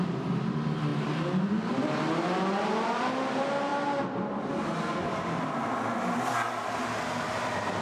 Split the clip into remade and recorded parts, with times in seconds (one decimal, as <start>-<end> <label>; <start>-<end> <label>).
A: 0.0-7.8 recorded